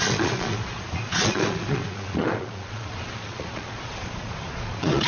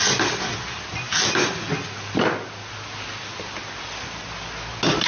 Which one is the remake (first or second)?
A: first